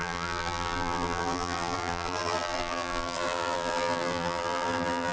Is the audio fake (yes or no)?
yes